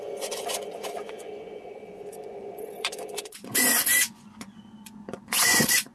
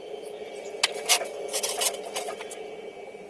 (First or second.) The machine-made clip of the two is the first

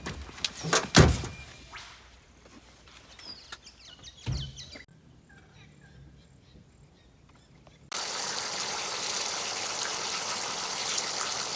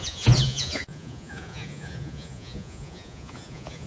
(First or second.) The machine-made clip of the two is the second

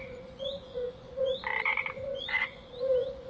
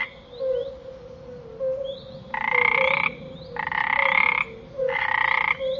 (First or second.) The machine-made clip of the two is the first